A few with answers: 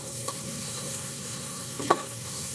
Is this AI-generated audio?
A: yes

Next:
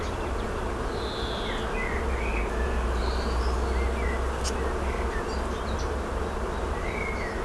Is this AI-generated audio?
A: no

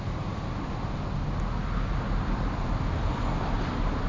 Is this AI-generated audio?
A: no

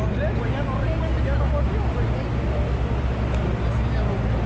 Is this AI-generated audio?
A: no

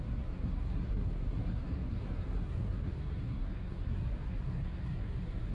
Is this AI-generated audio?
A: yes